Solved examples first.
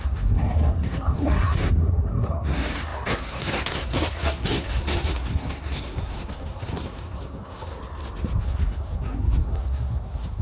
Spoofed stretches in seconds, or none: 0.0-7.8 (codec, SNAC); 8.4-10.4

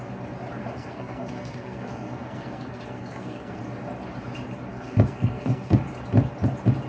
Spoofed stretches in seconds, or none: 0.6-3.6 (codec, SNAC); 4.7-5.8

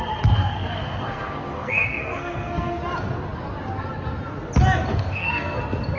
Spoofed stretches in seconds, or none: 0.4-2.8 (codec, SNAC); 4.9-5.6

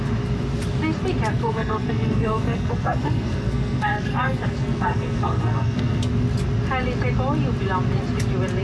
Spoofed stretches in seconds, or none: 1.3-6.1 (codec, SNAC)

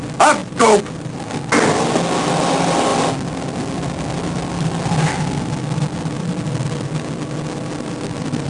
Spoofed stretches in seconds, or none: none

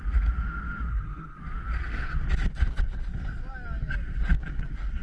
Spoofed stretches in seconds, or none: 0.9-1.4 (codec, SNAC)

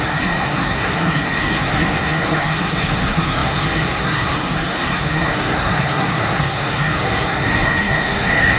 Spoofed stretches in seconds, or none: 0.0-8.6 (codec, SNAC)

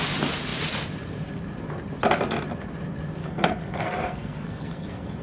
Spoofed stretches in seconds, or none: 3.2-5.2 (codec, SNAC)